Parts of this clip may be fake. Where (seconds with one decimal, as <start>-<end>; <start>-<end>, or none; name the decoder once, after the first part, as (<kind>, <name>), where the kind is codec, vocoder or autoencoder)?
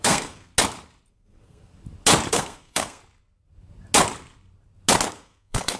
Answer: 0.0-0.5 (codec, SNAC); 1.1-1.7; 2.3-3.0; 5.1-5.8